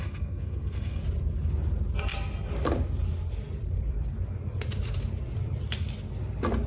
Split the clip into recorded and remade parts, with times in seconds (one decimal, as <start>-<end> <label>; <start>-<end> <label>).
0.0-1.0 remade; 1.0-6.7 recorded